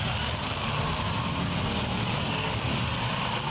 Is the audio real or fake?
real